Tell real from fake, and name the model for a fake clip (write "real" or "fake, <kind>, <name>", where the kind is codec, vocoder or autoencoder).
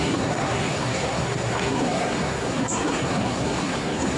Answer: fake, codec, SNAC